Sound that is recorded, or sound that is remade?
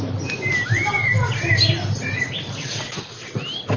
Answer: recorded